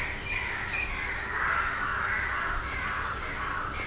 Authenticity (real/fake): real